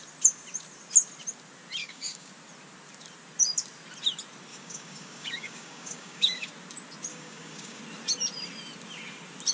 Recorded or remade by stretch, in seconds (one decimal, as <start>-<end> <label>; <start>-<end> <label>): 0.0-1.8 recorded; 1.8-2.3 remade; 2.3-4.5 recorded; 4.5-6.5 remade; 6.5-7.1 recorded; 7.1-7.8 remade; 7.8-9.5 recorded